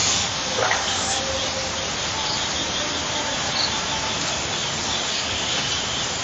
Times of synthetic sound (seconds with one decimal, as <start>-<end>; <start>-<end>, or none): 0.0-1.2; 5.1-5.7